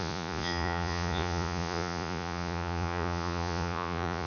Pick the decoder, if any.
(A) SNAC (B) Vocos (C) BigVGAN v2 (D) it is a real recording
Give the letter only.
B